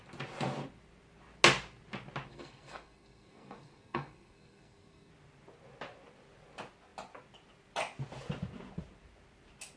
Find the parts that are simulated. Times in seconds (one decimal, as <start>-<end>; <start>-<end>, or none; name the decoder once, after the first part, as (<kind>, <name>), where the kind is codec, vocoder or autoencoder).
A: 2.3-5.1 (codec, SNAC)